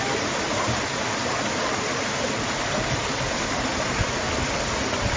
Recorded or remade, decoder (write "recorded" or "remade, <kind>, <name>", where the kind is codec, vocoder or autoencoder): recorded